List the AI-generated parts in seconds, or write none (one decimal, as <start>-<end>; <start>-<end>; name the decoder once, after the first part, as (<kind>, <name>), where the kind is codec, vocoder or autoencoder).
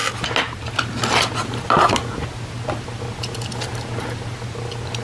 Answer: none